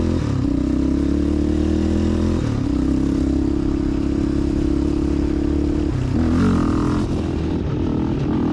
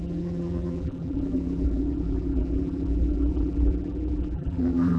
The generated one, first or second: second